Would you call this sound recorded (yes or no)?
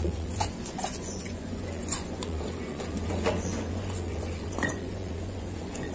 no